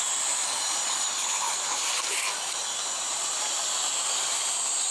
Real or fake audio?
real